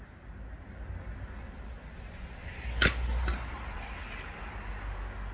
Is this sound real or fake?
real